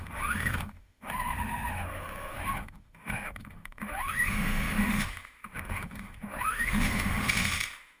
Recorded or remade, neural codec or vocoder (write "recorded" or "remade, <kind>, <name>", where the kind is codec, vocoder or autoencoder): remade, autoencoder, DAC-VAE